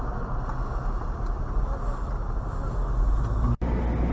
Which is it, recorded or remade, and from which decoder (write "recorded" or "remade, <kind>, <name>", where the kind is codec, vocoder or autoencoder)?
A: recorded